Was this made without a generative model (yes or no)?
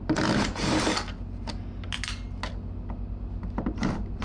yes